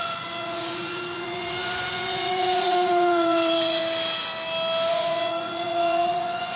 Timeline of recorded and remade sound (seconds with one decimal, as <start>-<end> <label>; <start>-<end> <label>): 0.0-3.8 remade; 3.8-4.9 recorded; 4.9-6.6 remade